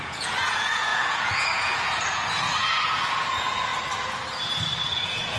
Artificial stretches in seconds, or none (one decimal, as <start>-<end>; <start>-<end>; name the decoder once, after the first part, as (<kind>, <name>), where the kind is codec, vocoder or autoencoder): 0.0-3.7 (vocoder, Vocos); 4.8-5.4